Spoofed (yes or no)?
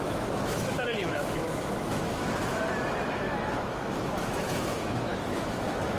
yes